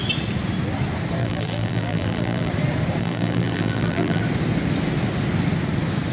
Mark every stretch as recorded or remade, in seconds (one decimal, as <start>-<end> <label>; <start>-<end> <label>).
0.0-1.2 recorded; 1.2-2.5 remade; 2.5-3.0 recorded; 3.0-4.2 remade; 4.2-6.1 recorded